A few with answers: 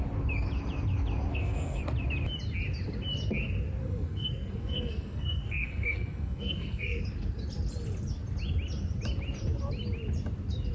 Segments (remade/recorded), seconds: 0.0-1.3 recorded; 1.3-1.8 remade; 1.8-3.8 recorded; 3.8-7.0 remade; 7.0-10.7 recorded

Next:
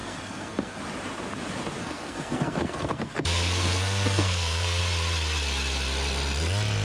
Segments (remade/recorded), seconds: 0.0-0.8 remade; 0.8-1.8 recorded; 1.8-4.8 remade; 4.8-6.8 recorded

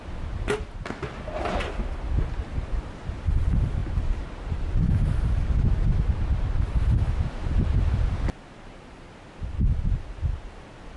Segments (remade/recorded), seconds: 0.0-11.0 recorded

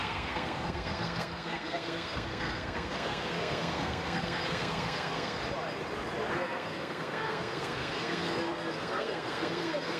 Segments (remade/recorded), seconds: 0.0-5.4 remade; 5.4-6.3 recorded; 6.3-10.0 remade

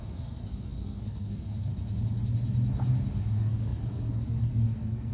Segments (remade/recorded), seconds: 0.0-1.7 remade; 1.7-3.2 recorded; 3.2-5.1 remade